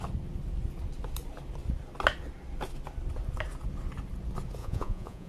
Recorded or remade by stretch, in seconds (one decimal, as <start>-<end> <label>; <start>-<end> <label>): 0.0-4.6 recorded; 4.6-5.3 remade